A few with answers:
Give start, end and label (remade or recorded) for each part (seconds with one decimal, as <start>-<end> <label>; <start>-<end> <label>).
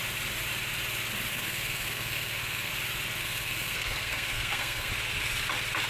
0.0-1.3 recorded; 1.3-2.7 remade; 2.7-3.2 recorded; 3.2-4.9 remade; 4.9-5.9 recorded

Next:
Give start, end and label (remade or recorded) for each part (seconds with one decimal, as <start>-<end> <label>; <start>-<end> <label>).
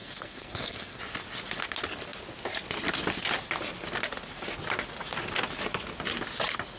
0.0-1.0 remade; 1.0-6.8 recorded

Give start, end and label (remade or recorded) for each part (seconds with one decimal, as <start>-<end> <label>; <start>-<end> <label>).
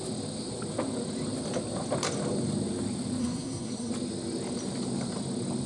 0.0-3.2 recorded; 3.2-3.9 remade; 3.9-5.7 recorded